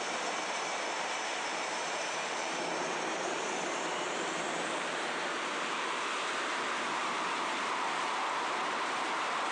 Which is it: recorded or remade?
remade